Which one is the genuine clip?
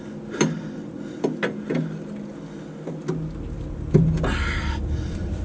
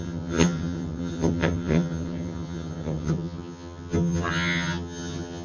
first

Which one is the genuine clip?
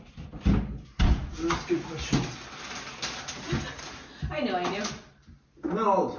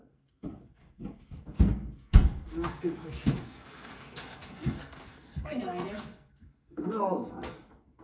first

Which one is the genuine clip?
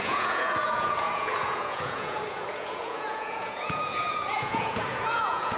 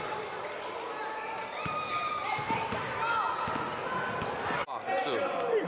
second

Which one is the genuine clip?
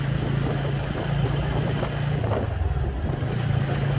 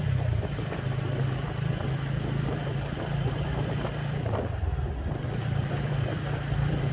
first